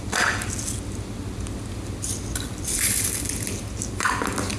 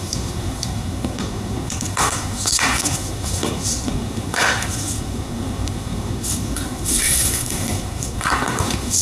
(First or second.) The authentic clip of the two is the first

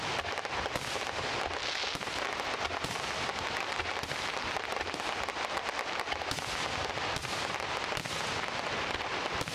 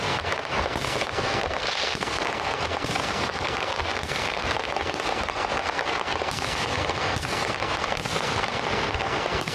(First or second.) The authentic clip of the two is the first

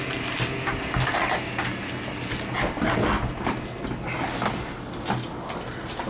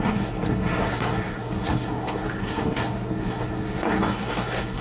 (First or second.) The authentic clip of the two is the first